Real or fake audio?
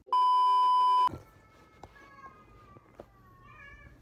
real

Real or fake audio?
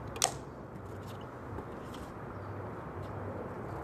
real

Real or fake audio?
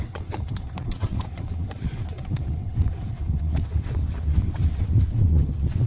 fake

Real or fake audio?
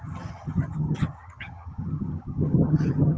fake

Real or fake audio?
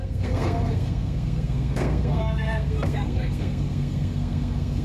fake